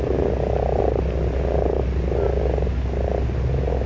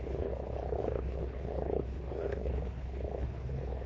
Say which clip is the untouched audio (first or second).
first